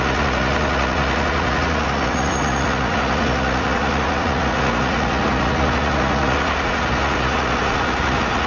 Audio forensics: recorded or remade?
remade